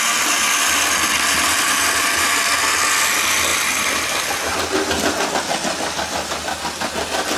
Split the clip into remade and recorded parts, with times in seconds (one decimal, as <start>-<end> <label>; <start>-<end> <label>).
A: 0.0-7.4 recorded

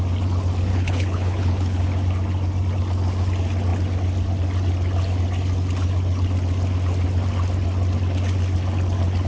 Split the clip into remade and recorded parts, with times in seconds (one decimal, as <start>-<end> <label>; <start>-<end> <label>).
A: 0.0-0.7 recorded; 0.7-1.8 remade; 1.8-9.3 recorded

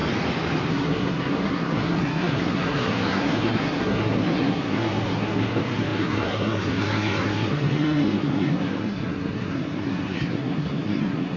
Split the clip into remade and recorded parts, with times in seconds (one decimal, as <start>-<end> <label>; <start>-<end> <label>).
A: 0.0-0.7 recorded; 0.7-11.4 remade

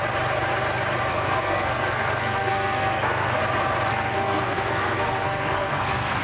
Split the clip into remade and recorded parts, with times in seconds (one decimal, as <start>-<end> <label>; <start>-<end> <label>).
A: 0.0-1.1 recorded; 1.1-3.4 remade; 3.4-3.9 recorded; 3.9-6.2 remade

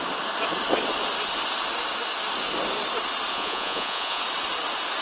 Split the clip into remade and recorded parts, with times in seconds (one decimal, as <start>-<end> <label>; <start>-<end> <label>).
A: 0.0-3.3 recorded; 3.3-4.2 remade; 4.2-5.0 recorded

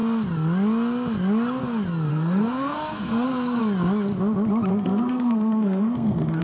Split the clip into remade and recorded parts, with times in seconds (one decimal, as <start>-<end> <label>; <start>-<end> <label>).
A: 0.0-2.1 recorded; 2.1-3.6 remade; 3.6-4.7 recorded; 4.7-6.4 remade

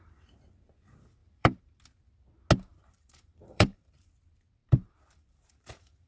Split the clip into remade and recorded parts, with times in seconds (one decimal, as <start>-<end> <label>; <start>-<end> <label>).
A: 0.0-1.2 recorded; 1.2-1.8 remade; 1.8-2.7 recorded; 2.7-4.1 remade; 4.1-4.6 recorded; 4.6-6.1 remade

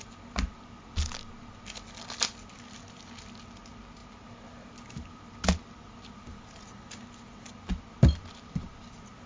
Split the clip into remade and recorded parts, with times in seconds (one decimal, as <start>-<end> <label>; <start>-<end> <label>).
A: 0.0-9.3 recorded